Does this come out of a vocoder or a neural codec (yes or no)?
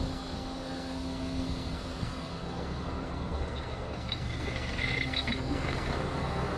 yes